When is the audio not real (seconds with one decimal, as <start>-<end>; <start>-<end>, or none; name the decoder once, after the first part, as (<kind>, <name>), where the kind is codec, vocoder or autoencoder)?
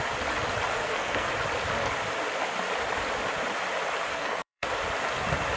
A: 0.7-1.3 (codec, SNAC); 4.1-4.7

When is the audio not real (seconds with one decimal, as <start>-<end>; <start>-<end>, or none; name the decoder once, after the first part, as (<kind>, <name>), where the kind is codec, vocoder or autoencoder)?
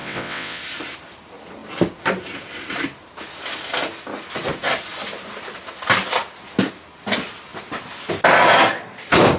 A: 0.0-0.6 (vocoder, WaveNeXt)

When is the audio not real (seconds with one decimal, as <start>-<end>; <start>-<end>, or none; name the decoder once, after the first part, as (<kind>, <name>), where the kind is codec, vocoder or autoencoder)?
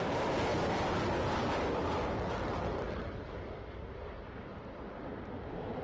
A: none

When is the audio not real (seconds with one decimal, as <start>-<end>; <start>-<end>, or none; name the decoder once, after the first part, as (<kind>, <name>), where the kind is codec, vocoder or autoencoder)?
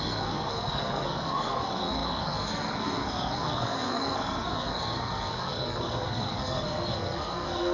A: 0.0-7.7 (codec, SNAC)